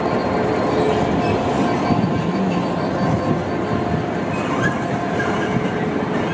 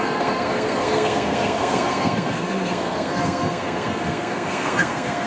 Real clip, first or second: first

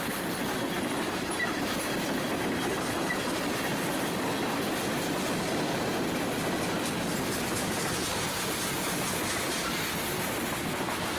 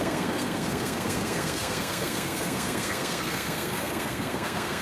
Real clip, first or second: first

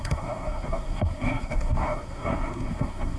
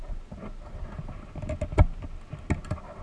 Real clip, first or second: second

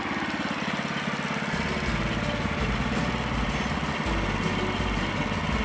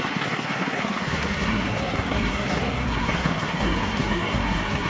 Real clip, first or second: first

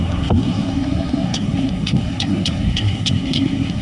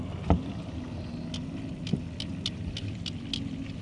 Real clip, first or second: second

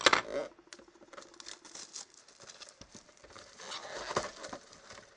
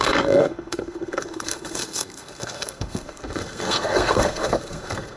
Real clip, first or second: first